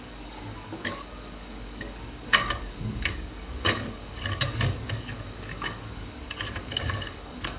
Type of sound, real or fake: fake